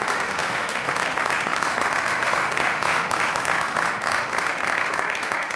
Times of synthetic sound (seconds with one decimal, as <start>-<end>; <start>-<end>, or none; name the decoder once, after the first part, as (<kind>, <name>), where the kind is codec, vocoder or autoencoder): 0.0-5.6 (autoencoder, DAC-VAE)